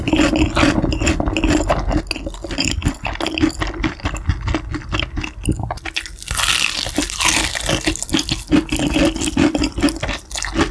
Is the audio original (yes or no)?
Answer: yes